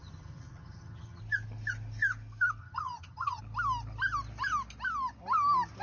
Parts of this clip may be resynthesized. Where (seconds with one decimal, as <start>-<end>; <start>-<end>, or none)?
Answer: 0.0-1.2; 2.6-3.4